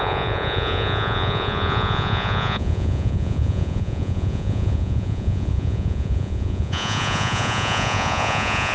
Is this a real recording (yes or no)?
no